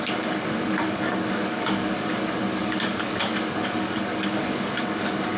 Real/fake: fake